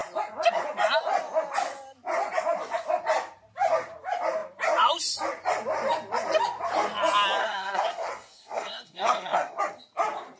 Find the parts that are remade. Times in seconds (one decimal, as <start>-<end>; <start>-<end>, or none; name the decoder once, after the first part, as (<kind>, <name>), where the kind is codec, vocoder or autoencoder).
7.4-9.6 (codec, SNAC)